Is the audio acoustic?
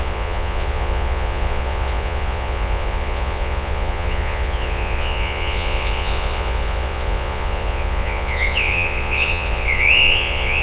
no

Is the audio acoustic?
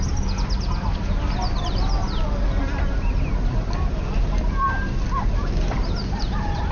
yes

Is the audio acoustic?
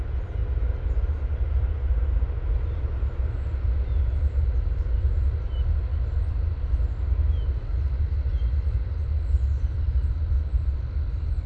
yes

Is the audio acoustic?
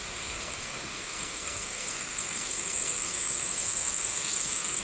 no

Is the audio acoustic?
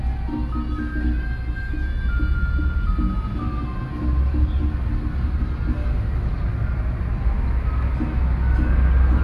yes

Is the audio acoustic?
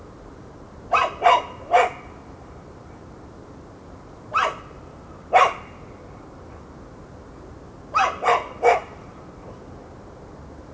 yes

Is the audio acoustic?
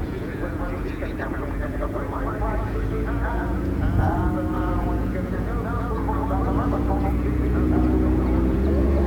no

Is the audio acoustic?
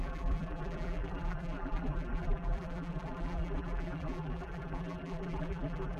no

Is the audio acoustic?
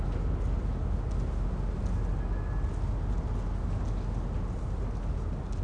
yes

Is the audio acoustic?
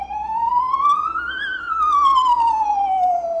yes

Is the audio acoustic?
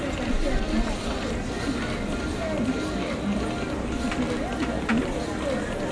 yes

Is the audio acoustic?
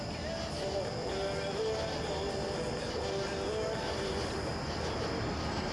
yes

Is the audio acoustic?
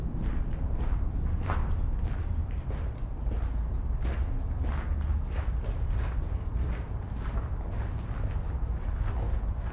yes